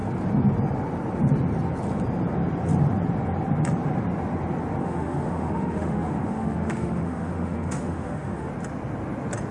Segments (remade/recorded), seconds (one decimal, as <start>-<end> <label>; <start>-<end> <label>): 0.0-4.8 recorded; 4.8-8.5 remade; 8.5-9.5 recorded